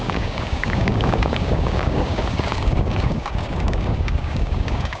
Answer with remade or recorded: remade